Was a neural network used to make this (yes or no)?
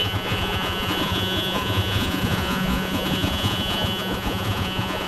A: yes